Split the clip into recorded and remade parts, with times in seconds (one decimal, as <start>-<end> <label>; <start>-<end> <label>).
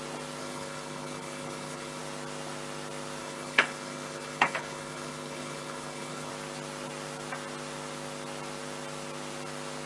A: 0.0-0.4 recorded; 0.4-2.0 remade; 2.0-3.2 recorded; 3.2-6.3 remade; 6.3-9.9 recorded